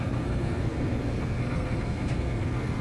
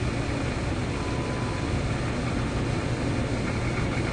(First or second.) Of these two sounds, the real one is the second